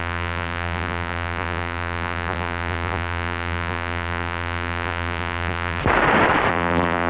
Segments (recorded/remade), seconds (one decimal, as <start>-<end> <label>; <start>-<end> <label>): 0.0-5.8 remade; 5.8-6.5 recorded; 6.5-7.1 remade